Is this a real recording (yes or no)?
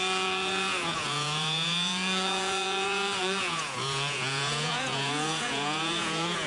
no